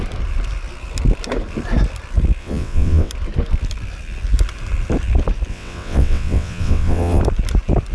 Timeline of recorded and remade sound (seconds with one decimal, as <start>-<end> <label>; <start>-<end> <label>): 0.0-2.4 recorded; 2.4-3.1 remade; 3.1-5.5 recorded; 5.5-7.2 remade; 7.2-7.9 recorded